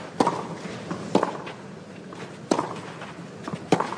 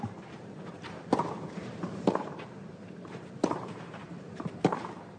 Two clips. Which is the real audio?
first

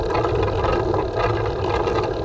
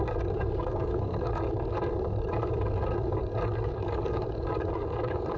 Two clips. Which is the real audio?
first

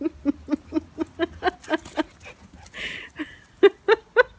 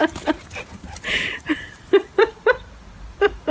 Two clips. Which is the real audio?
first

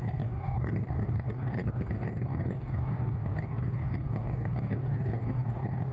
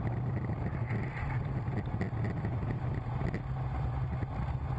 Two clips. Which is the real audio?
second